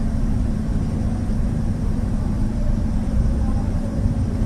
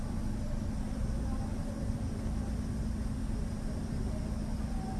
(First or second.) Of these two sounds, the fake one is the first